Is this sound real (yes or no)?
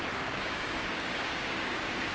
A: no